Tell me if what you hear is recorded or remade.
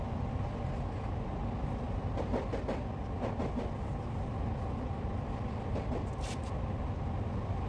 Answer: recorded